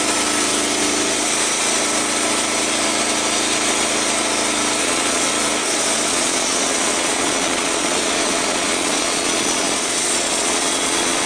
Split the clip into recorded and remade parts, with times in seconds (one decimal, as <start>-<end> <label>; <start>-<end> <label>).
0.0-4.8 recorded; 4.8-5.3 remade; 5.3-6.1 recorded; 6.1-11.3 remade